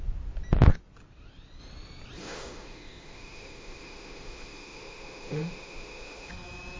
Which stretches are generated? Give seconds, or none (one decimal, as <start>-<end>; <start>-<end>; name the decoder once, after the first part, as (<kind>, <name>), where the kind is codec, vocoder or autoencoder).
2.2-6.3 (autoencoder, DAC-VAE)